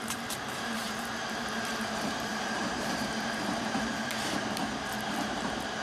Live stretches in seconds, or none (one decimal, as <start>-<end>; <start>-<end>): 4.6-5.1